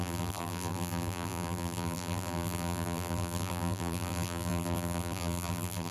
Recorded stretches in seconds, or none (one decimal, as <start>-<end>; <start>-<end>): none